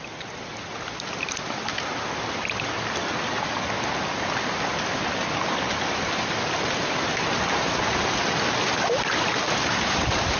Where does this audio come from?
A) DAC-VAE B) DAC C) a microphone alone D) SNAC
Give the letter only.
C